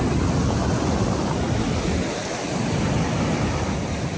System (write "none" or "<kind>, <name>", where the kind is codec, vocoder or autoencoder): vocoder, BigVGAN v2